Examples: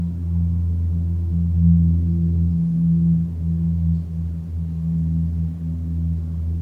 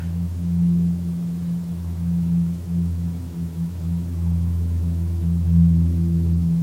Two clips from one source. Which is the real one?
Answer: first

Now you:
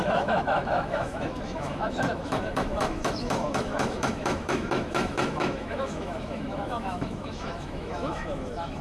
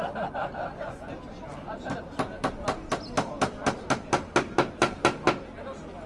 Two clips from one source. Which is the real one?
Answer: second